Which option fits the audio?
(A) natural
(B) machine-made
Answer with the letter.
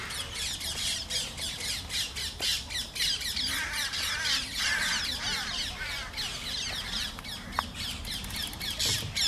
A